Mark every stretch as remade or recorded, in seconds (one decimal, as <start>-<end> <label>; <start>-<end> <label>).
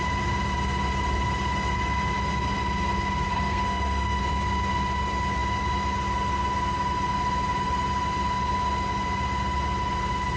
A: 0.0-3.3 recorded; 3.3-4.2 remade; 4.2-10.4 recorded